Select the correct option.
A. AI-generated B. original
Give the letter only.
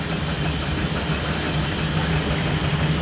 B